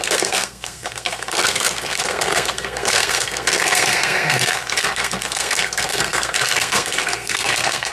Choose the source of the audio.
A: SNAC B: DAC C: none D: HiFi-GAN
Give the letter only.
A